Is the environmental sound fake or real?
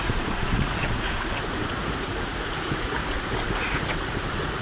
fake